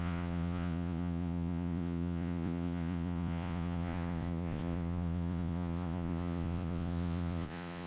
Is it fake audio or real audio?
fake